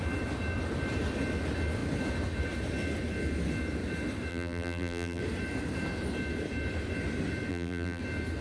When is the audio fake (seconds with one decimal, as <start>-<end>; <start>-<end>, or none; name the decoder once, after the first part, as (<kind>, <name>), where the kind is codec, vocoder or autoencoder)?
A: 4.3-5.2 (vocoder, BigVGAN v2); 7.5-8.0